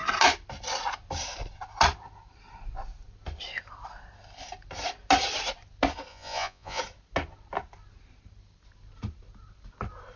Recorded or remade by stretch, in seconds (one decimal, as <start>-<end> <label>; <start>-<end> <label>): 0.0-6.1 recorded; 6.1-6.8 remade; 6.8-10.2 recorded